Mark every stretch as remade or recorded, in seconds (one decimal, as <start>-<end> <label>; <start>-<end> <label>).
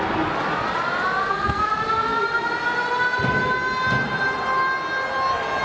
0.0-1.2 recorded; 1.2-1.7 remade; 1.7-5.6 recorded